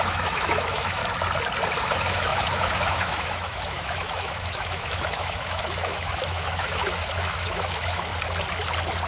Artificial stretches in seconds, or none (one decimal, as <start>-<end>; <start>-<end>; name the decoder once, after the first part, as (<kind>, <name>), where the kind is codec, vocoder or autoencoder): 0.0-1.0 (autoencoder, DAC-VAE); 1.8-8.1